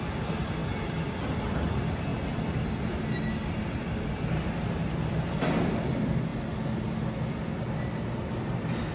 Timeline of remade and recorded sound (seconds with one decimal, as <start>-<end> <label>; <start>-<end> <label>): 0.0-8.9 recorded